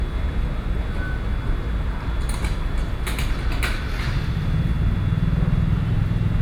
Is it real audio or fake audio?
real